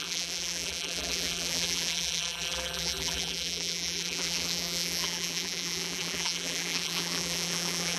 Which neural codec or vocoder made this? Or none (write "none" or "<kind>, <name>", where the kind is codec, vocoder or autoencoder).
vocoder, BigVGAN v2